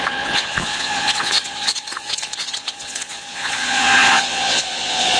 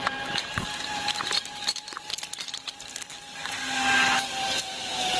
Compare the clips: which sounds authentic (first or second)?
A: second